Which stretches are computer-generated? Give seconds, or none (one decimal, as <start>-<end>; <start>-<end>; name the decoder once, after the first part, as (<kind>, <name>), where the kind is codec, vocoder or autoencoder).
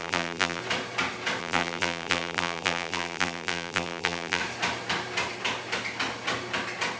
0.0-0.6 (vocoder, BigVGAN v2); 1.4-4.4